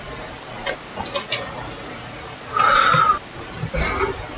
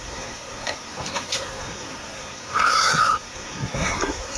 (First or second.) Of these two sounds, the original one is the first